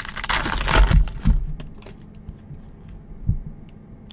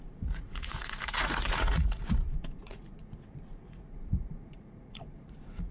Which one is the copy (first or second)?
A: second